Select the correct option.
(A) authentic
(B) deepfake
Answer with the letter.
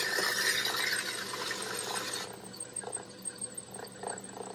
A